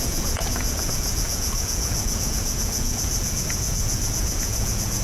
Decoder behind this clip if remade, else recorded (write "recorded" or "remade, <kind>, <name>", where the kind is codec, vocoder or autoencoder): remade, vocoder, Vocos